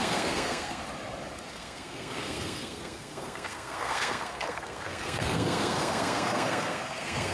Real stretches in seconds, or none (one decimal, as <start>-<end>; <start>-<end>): 0.8-1.5